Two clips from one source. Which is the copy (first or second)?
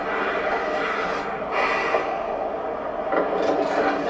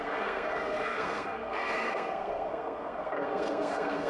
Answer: second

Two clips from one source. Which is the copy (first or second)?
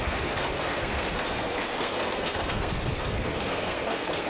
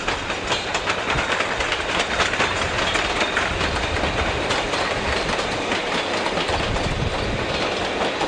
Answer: first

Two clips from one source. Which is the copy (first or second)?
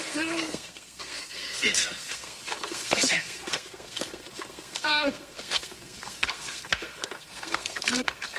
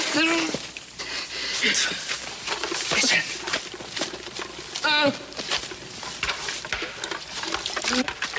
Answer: first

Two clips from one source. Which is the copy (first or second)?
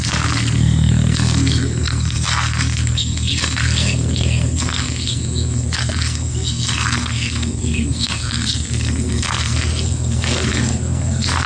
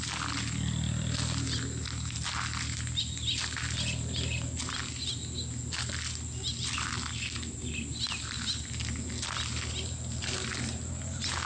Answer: first